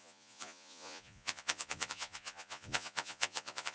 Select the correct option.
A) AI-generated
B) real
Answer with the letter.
A